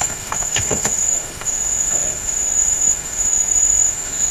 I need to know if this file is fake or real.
fake